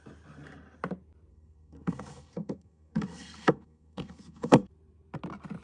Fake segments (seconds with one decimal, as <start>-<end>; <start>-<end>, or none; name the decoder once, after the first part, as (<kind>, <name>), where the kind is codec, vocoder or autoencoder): 1.3-4.7 (codec, SNAC)